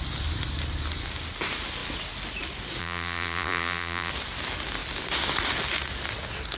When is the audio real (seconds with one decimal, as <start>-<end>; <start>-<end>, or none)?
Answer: 0.0-2.8; 4.1-6.6